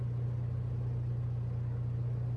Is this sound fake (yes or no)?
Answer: no